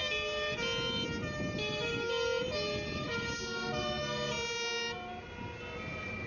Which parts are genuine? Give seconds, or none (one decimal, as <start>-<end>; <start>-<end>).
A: 0.0-6.3